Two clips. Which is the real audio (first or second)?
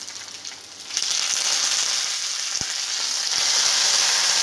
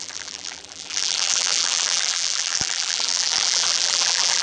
first